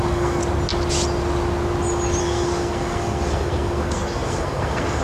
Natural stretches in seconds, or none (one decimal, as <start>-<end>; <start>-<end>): 0.4-2.2